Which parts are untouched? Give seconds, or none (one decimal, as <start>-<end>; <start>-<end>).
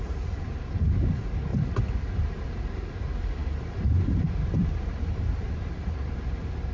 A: 1.5-2.6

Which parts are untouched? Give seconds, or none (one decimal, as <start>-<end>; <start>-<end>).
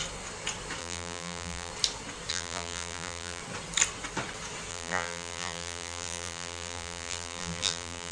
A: 0.0-0.8; 1.7-2.3; 3.4-4.7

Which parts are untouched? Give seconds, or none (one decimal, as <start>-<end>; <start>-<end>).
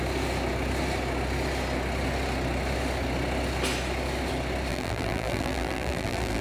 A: 0.0-4.7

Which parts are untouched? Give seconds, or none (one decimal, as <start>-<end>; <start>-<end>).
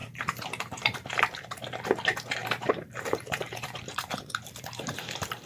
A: 1.2-2.4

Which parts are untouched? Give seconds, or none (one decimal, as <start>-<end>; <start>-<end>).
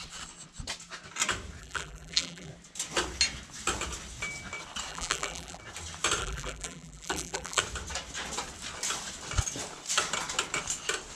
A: 0.0-1.6; 2.5-4.9; 5.6-6.2; 7.6-11.2